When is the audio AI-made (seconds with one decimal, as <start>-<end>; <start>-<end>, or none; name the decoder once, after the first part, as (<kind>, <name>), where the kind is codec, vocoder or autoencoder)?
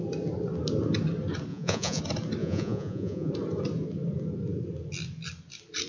1.5-2.0 (vocoder, Vocos); 2.4-3.3